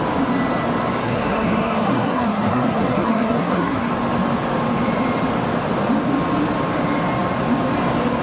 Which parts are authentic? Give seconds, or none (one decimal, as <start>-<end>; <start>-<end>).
0.0-1.0; 3.9-8.2